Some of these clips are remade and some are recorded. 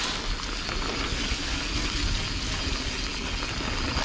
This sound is recorded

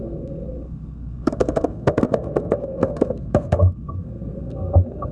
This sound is remade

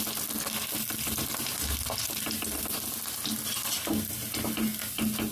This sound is recorded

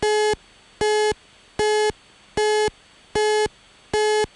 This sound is recorded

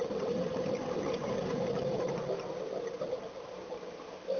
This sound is recorded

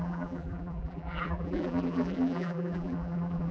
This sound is remade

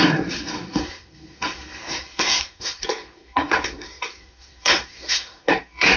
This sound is remade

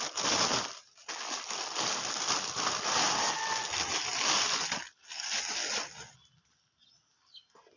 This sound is recorded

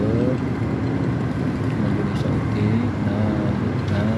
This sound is recorded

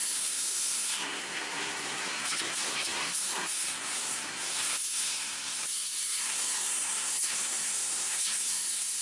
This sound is remade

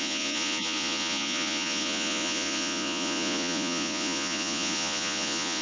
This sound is remade